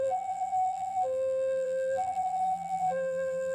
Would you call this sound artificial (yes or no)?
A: yes